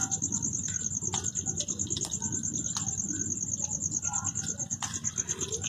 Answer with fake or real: real